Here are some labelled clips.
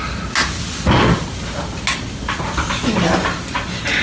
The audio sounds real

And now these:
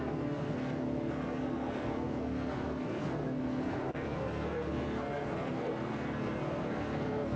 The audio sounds fake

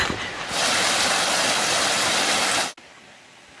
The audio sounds real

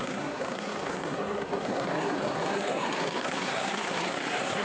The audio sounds fake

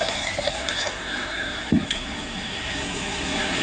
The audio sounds fake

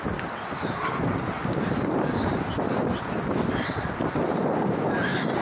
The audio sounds real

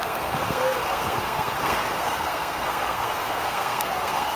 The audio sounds fake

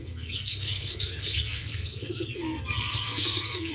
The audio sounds fake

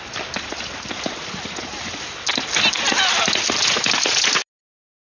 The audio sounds real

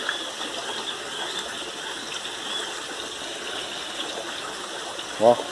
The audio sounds real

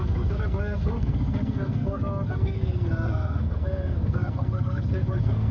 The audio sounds fake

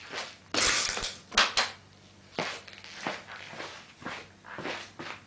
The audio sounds real